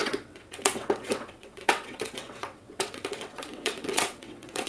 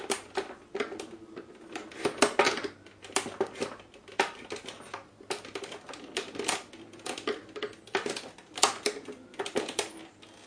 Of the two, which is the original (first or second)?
second